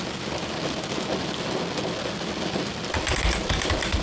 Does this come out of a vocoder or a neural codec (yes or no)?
no